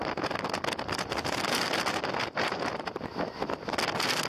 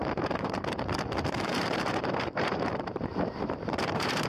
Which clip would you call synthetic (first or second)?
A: second